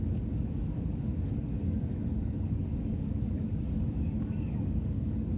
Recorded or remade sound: remade